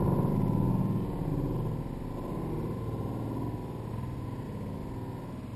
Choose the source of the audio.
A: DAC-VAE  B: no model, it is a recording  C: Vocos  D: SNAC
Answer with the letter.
B